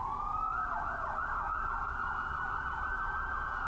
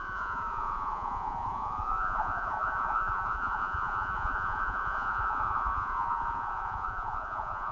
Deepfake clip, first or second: second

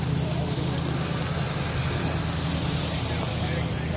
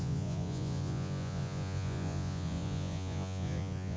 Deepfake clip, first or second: second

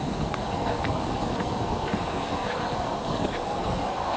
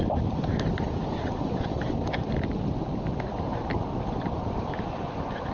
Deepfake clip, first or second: first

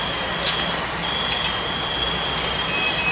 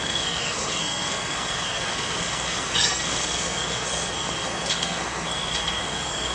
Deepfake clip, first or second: second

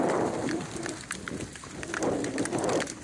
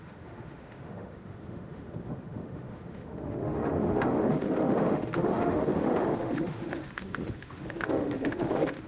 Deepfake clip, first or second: second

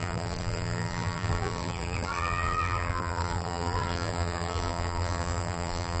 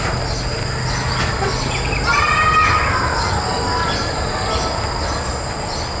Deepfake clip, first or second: first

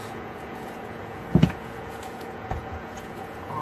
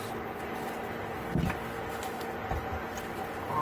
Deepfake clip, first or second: first